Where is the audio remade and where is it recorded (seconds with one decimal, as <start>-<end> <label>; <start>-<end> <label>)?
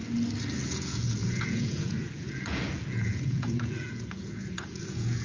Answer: 0.0-0.6 recorded; 0.6-5.2 remade